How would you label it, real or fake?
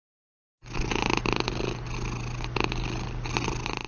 real